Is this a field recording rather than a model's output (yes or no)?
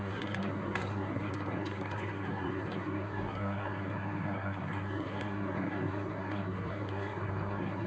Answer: no